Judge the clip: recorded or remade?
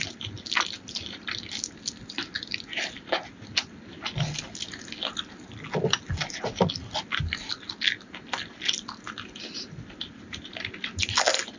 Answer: recorded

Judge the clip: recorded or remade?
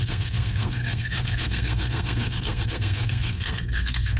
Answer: remade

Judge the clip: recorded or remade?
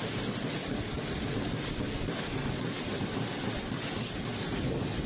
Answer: recorded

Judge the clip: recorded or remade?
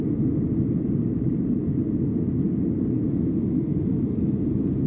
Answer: recorded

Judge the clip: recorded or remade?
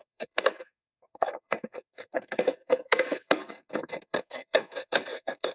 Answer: remade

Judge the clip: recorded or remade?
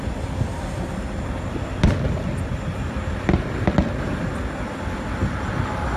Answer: recorded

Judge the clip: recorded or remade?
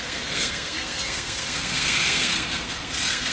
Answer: remade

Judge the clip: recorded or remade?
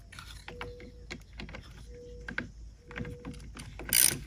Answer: recorded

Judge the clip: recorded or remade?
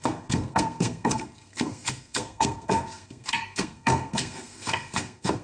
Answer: remade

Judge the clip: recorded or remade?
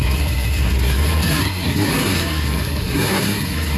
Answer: remade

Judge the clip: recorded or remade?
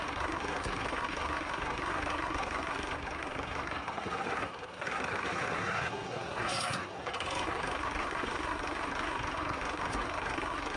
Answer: remade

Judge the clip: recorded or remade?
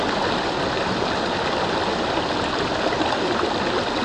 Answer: recorded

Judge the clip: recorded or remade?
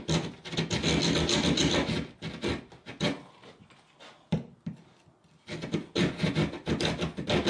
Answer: recorded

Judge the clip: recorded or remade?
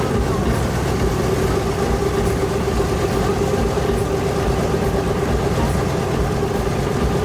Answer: recorded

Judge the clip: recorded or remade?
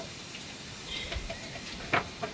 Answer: recorded